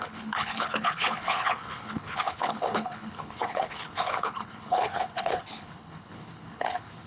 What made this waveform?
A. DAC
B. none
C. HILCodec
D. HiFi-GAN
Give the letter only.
C